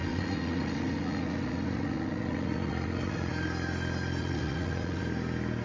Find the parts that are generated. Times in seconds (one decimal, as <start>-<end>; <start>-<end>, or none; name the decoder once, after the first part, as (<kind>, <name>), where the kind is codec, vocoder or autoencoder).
0.0-3.3 (vocoder, Vocos); 4.2-5.0